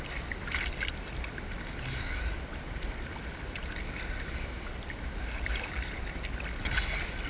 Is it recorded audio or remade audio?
recorded